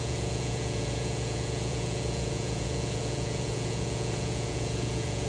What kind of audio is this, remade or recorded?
remade